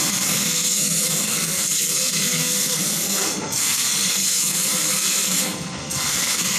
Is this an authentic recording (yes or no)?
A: no